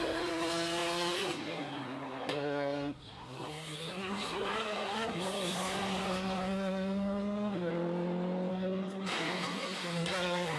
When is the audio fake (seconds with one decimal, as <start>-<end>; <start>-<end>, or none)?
0.0-7.7; 8.5-10.6